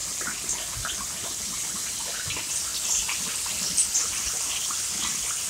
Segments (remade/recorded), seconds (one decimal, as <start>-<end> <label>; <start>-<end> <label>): 0.0-5.5 recorded